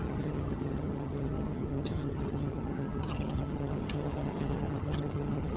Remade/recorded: remade